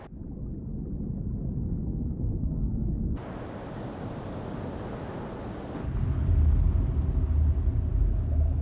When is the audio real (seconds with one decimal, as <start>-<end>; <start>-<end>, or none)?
0.0-1.6; 3.2-8.6